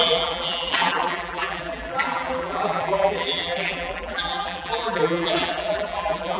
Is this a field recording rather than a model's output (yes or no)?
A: no